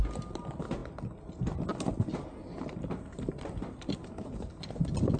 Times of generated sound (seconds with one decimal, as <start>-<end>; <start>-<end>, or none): none